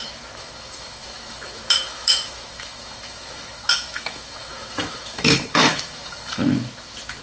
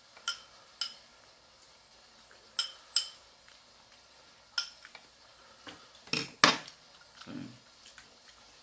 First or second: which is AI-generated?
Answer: first